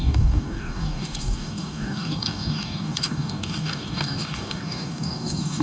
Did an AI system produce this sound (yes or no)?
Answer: yes